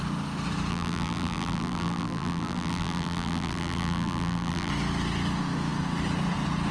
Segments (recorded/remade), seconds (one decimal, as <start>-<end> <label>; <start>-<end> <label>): 0.0-0.7 recorded; 0.7-4.7 remade; 4.7-6.7 recorded